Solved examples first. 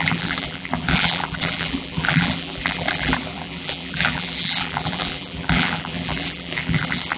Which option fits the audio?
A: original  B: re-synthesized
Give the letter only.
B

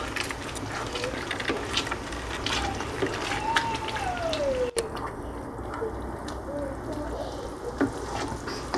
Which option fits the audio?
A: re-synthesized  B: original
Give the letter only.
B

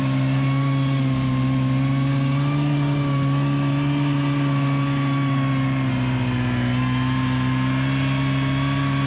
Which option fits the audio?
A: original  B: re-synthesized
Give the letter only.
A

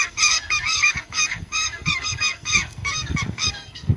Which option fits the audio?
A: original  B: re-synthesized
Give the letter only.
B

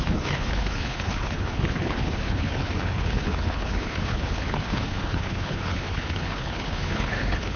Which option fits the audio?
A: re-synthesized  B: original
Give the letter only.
A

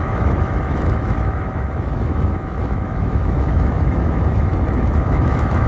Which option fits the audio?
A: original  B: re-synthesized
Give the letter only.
B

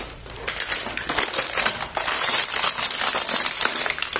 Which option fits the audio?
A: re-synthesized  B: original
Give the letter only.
A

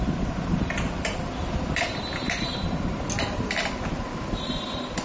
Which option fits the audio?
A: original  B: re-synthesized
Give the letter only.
A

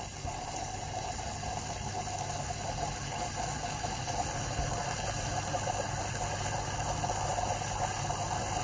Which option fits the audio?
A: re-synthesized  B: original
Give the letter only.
B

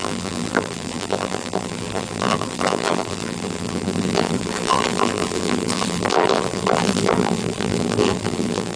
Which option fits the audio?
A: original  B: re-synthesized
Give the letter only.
B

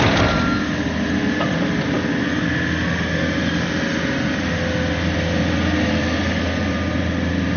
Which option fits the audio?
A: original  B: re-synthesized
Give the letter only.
A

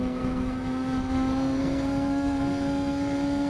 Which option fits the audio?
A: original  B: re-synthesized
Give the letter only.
B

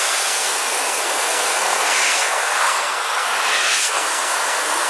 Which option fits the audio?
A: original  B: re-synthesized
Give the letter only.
B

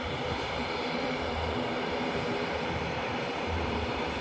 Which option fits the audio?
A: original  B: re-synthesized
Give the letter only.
B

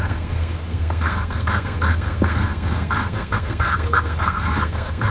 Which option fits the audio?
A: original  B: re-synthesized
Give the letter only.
B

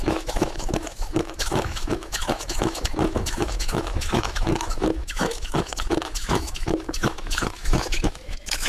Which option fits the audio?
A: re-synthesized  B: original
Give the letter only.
A